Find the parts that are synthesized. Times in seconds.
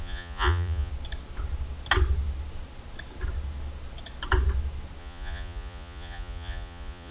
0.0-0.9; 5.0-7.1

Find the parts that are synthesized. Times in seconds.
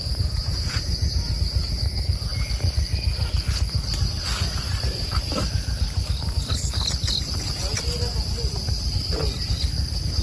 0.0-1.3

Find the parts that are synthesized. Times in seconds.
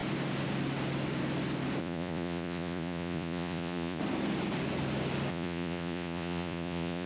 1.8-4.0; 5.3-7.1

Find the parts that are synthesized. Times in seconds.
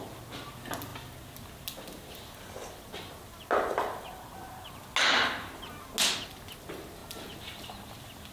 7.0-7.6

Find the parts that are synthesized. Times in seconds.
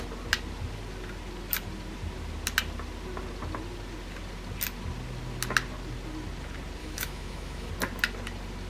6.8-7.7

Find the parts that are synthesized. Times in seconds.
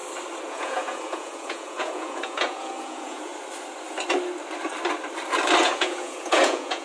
0.5-3.3; 5.6-6.8